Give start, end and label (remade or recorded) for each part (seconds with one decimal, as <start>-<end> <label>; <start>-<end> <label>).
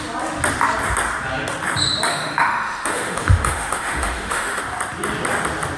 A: 0.0-2.1 recorded; 2.1-4.6 remade; 4.6-5.8 recorded